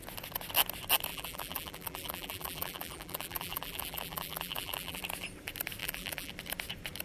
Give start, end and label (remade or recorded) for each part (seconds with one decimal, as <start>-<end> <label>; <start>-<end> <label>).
0.0-1.1 recorded; 1.1-5.0 remade; 5.0-5.8 recorded; 5.8-6.3 remade; 6.3-7.0 recorded